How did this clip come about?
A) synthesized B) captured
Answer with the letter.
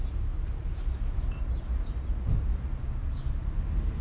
B